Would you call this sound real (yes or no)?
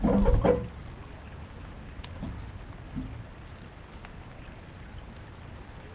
yes